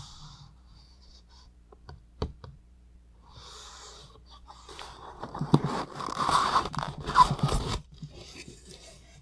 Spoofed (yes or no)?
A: yes